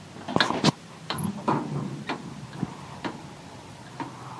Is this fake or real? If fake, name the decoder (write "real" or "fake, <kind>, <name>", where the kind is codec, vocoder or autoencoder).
real